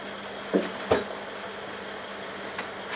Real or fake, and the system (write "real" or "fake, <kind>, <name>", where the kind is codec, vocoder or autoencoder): real